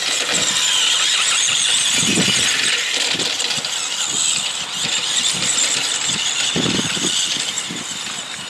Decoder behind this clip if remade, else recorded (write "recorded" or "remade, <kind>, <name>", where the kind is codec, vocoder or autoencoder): recorded